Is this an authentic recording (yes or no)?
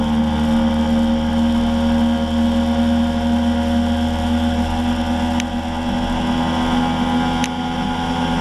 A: yes